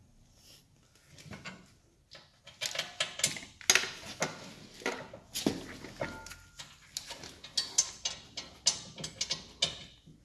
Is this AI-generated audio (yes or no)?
no